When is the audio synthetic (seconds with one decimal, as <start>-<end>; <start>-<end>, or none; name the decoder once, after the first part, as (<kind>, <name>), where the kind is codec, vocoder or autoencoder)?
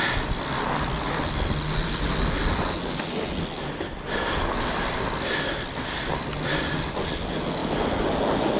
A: none